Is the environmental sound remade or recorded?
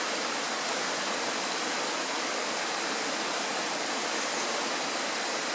remade